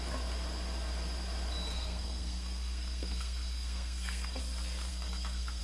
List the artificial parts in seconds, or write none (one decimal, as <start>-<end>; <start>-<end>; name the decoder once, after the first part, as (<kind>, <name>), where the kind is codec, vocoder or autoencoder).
1.7-4.4 (codec, SNAC); 4.9-5.6